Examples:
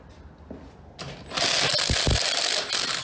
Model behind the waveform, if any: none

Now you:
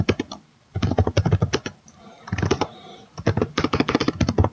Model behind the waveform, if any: vocoder, BigVGAN v2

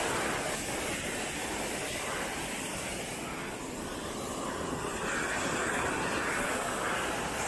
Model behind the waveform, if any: none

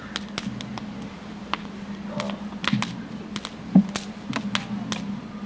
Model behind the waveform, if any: none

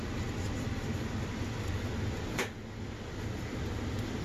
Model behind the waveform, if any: none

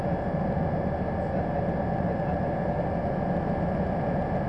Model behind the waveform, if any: none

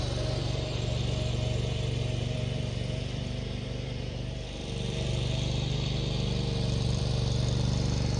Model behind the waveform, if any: vocoder, BigVGAN v2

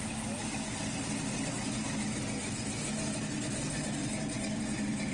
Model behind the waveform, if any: none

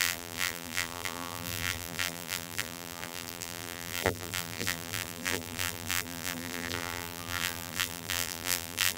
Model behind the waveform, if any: vocoder, BigVGAN v2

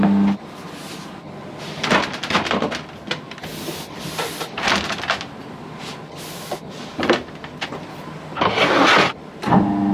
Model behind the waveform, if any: none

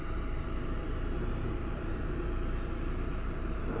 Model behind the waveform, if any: vocoder, BigVGAN v2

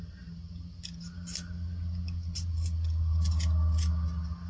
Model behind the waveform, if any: none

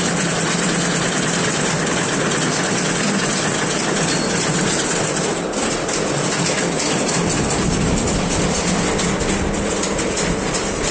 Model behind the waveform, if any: none